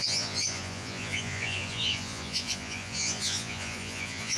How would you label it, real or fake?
fake